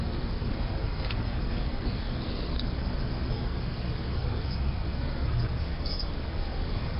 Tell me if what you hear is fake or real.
fake